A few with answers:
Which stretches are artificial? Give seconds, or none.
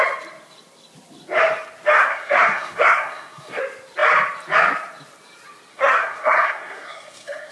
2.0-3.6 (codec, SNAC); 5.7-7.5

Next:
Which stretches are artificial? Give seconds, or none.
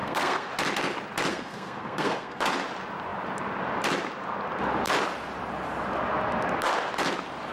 0.0-0.5 (codec, SNAC); 1.3-2.4